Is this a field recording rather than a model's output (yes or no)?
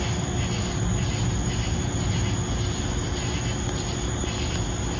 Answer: yes